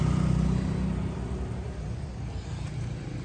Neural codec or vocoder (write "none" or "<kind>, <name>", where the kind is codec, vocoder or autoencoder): none